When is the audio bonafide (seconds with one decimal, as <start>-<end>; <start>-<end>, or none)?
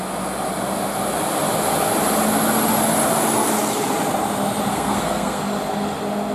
0.0-4.7; 5.4-6.3